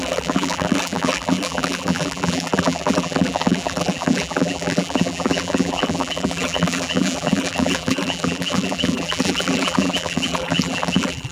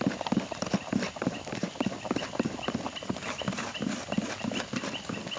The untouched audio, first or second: second